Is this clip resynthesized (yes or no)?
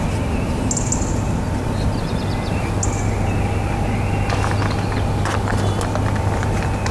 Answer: no